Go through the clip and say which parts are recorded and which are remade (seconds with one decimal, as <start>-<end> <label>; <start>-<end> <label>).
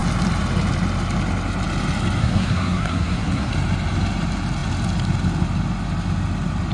0.0-2.2 recorded; 2.2-3.5 remade; 3.5-6.7 recorded